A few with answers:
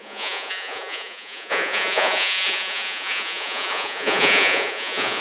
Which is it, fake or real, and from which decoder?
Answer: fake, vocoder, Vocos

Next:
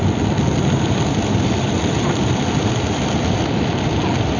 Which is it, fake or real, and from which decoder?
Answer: real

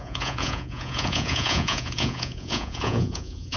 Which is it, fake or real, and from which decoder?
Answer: fake, vocoder, Vocos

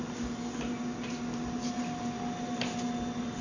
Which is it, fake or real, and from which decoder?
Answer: real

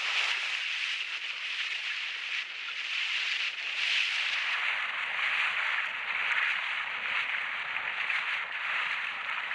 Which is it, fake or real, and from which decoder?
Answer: real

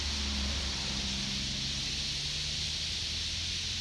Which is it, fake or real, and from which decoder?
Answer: real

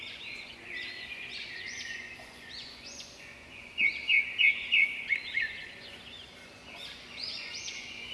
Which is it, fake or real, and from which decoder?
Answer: fake, vocoder, Vocos